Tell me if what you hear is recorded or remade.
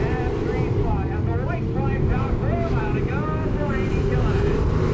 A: recorded